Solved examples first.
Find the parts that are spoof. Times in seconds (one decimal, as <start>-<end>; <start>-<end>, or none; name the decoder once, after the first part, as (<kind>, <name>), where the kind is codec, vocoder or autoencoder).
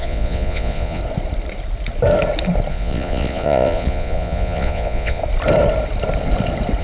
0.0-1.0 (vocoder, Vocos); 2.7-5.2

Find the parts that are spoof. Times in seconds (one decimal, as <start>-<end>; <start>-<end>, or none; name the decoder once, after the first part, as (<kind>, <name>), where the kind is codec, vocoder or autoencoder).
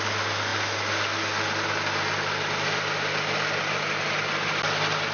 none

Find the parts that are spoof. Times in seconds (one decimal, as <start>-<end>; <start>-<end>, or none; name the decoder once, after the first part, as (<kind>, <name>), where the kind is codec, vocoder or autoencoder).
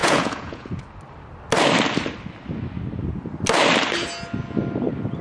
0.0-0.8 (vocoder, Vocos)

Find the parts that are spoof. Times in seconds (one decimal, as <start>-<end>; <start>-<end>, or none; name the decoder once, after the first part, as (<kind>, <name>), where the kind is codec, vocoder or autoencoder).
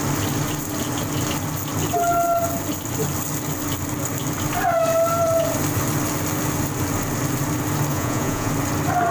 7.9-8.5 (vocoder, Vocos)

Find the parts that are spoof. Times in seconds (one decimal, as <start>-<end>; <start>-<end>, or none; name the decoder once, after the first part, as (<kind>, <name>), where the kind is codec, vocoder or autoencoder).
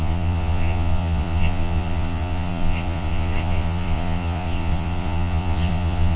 0.0-6.2 (vocoder, Vocos)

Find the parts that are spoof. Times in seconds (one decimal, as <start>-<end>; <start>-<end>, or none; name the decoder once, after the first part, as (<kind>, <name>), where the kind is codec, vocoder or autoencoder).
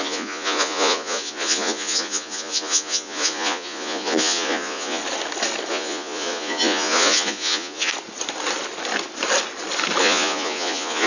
0.0-5.0 (vocoder, Vocos); 5.7-7.9; 10.0-11.1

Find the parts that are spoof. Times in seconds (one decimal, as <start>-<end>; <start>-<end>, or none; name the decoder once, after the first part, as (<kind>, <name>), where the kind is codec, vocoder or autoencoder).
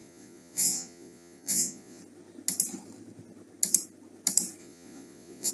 0.0-2.0 (vocoder, Vocos); 4.6-5.5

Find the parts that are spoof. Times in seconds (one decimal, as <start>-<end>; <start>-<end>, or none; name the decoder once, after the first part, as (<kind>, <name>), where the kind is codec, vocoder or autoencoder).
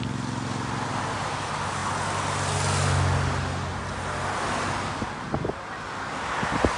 none